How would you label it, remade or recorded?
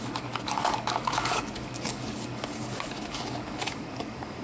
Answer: remade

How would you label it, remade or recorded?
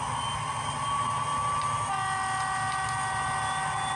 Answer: recorded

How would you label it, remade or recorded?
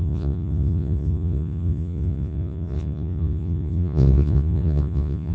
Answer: remade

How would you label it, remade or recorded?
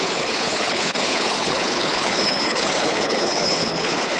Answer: remade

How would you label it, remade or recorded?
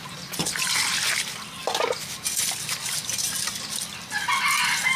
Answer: recorded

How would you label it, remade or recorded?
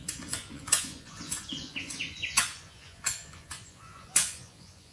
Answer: remade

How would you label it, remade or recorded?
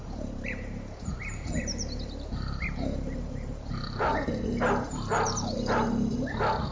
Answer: remade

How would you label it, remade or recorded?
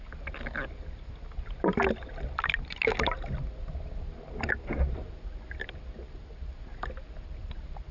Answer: recorded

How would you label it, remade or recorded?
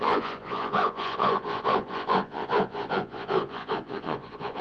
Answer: remade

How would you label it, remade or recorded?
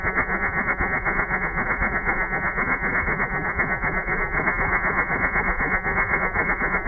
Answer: remade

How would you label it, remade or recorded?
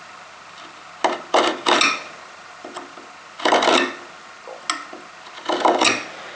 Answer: recorded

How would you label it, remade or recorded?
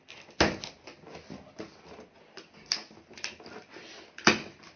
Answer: recorded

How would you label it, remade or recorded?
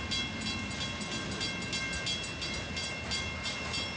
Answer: recorded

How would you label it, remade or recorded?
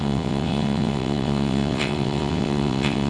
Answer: remade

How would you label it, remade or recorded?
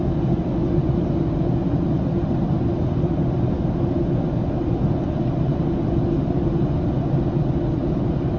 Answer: recorded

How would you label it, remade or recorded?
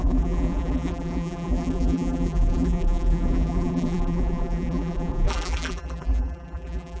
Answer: remade